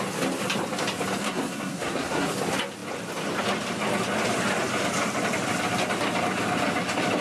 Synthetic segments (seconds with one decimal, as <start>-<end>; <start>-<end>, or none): 1.2-2.3